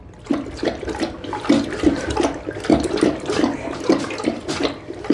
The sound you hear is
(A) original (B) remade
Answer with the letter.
A